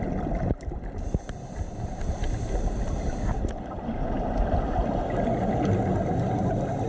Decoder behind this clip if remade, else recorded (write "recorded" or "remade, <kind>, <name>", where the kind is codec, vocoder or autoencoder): recorded